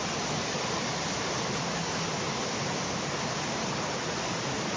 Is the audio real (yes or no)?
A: yes